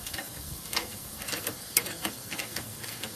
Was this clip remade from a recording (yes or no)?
yes